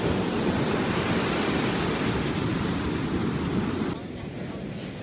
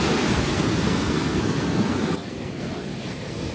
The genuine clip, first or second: first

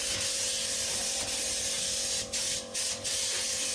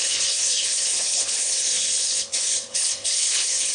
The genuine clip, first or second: first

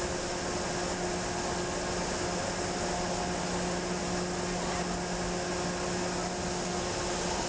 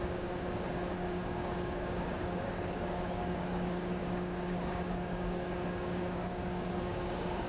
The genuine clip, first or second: first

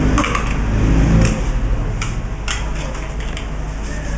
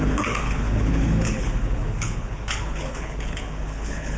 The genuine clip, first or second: first